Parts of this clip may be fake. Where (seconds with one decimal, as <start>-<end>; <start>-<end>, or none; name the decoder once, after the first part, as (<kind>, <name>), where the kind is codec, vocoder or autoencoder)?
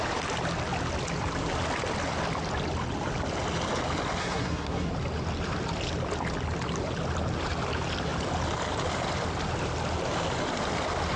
4.2-4.9 (codec, SNAC)